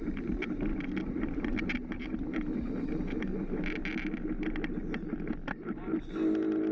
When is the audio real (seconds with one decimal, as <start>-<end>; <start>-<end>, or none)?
0.0-6.7